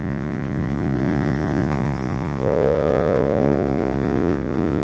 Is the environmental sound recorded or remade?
remade